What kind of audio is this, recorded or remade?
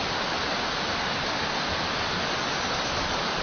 recorded